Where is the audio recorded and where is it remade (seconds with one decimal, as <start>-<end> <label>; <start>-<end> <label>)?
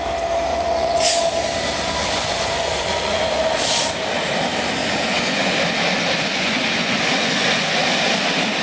0.0-0.5 recorded; 0.5-1.2 remade; 1.2-2.0 recorded; 2.0-3.2 remade; 3.2-4.8 recorded; 4.8-5.6 remade; 5.6-6.3 recorded; 6.3-7.8 remade; 7.8-8.6 recorded